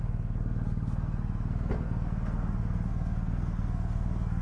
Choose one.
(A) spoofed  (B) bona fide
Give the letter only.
A